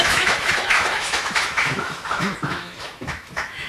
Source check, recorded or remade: remade